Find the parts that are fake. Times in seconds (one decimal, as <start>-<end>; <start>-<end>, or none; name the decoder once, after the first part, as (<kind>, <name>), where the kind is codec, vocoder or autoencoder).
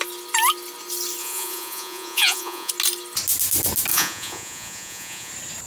1.2-2.7 (vocoder, Vocos); 3.9-5.3